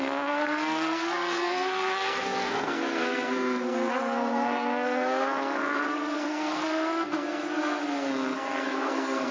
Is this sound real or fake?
fake